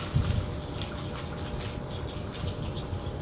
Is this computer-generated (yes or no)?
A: no